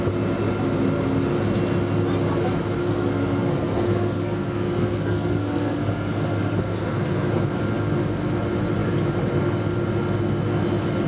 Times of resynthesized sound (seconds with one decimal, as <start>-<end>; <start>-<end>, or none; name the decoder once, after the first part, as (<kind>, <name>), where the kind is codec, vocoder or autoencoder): 2.8-7.4 (codec, SNAC)